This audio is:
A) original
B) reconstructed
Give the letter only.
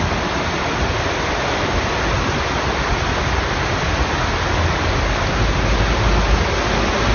A